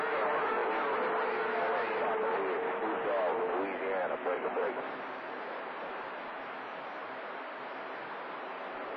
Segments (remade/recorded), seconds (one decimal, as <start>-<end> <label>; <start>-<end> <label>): 0.0-4.0 recorded; 4.0-6.7 remade; 6.7-9.0 recorded